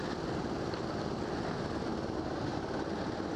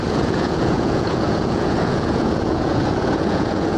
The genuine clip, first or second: first